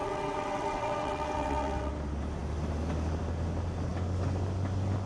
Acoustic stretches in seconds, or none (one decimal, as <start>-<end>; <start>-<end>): 1.9-5.1